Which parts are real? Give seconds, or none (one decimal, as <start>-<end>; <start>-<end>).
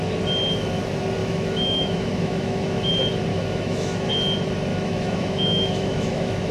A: 0.0-1.2; 2.9-3.3; 4.1-4.7